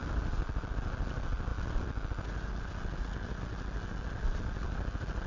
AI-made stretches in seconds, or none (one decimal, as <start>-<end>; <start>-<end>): none